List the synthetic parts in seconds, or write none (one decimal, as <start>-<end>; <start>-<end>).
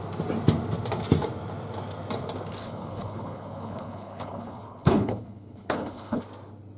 2.6-6.2